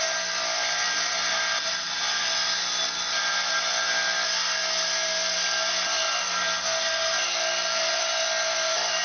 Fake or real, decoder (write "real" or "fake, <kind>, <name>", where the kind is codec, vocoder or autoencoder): real